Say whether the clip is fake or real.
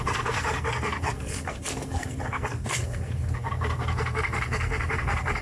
fake